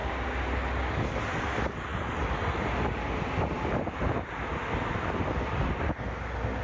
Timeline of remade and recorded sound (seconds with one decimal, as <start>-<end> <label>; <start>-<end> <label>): 0.0-6.6 recorded